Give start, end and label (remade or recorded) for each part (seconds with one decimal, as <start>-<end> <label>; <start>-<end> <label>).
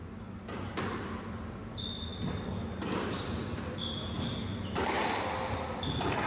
0.0-6.3 recorded